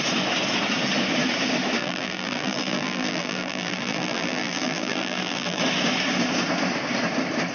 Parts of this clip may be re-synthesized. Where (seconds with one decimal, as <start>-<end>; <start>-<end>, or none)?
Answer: 1.8-5.6